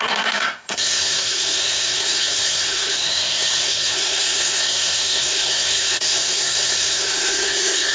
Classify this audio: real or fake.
fake